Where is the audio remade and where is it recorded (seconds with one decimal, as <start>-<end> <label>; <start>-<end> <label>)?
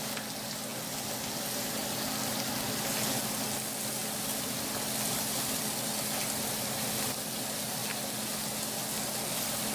0.0-9.7 recorded